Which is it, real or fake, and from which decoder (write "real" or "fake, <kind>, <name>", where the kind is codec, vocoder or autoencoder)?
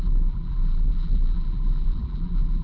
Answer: fake, vocoder, BigVGAN v2